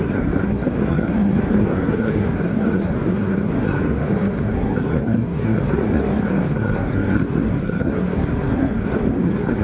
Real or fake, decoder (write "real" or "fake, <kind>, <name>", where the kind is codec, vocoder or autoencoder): fake, codec, SNAC